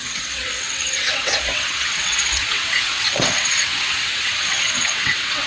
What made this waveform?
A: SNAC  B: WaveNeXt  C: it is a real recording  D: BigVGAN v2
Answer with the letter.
B